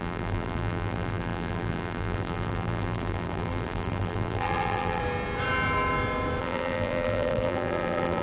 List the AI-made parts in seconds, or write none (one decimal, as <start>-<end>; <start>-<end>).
0.0-5.0; 6.4-8.2